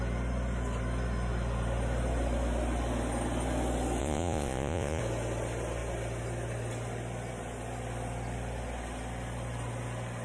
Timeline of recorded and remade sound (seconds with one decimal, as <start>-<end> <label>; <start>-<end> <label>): 0.0-4.0 recorded; 4.0-5.0 remade; 5.0-10.2 recorded